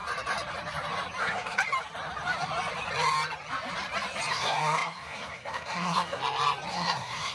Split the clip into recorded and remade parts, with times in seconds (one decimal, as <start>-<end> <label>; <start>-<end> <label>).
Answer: 0.0-1.2 recorded; 1.2-1.6 remade; 1.6-4.3 recorded; 4.3-6.2 remade; 6.2-6.7 recorded; 6.7-7.3 remade